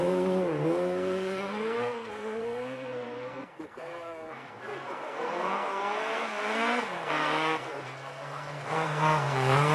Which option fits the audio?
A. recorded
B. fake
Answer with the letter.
B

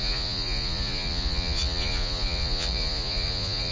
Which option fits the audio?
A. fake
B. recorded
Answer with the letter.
A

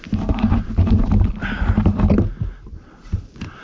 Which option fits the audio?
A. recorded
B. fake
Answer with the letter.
A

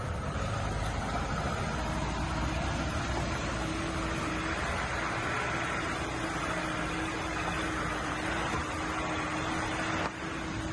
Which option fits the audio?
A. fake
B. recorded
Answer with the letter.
B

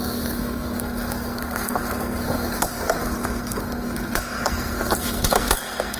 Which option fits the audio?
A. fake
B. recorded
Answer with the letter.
A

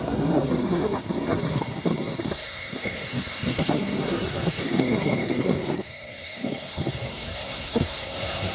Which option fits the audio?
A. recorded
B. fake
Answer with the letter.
B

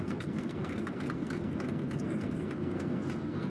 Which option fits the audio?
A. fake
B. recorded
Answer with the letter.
A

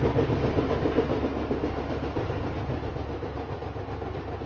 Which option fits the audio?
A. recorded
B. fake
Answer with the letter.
A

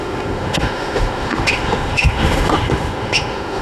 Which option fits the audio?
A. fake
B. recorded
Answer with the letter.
A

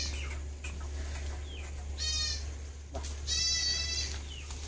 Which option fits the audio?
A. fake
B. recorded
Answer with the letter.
B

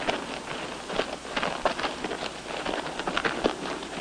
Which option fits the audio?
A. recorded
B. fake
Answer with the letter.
A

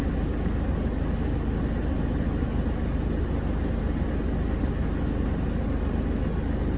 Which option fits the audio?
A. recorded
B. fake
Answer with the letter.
A